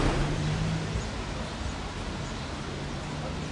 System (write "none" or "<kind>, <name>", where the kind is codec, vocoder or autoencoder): none